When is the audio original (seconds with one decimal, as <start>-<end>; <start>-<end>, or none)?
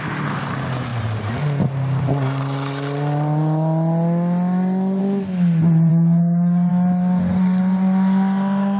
0.0-5.9; 6.7-8.8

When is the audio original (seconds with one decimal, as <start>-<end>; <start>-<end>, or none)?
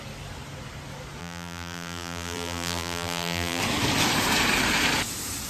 0.0-1.2; 3.6-5.5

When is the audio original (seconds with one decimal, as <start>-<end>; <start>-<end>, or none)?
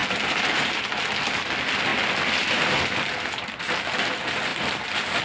0.0-5.2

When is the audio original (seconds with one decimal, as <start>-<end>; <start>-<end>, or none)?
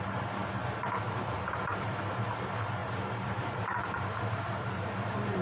0.4-1.1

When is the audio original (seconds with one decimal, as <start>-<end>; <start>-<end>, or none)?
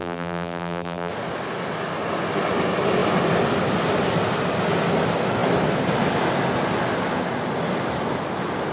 1.1-8.7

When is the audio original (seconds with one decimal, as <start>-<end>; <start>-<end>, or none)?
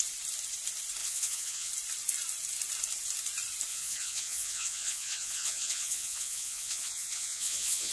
0.0-1.0; 1.7-3.7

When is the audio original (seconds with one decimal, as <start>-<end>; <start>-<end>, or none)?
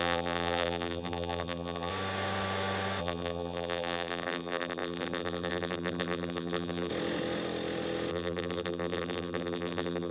1.9-3.0; 6.9-8.1